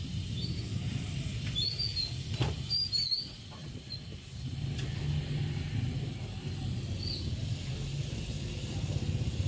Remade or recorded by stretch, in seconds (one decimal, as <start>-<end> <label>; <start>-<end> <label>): 0.0-9.5 recorded